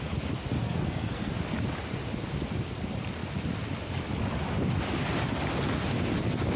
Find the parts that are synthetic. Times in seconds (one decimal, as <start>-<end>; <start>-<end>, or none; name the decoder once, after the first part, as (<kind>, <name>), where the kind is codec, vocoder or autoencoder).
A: 0.6-1.3 (codec, SNAC)